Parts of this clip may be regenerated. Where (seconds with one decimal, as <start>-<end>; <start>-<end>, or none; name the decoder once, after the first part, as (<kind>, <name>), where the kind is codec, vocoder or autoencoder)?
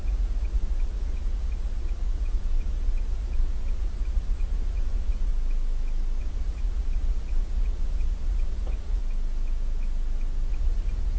0.0-5.3 (vocoder, Vocos); 6.2-9.0; 10.5-11.2